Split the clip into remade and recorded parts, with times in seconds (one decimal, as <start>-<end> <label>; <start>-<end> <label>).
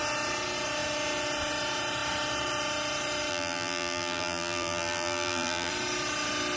0.0-3.3 recorded; 3.3-5.7 remade; 5.7-6.6 recorded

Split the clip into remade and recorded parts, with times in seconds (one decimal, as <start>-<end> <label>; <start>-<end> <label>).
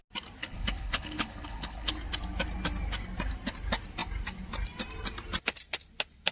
0.0-0.4 recorded; 0.4-1.9 remade; 1.9-6.3 recorded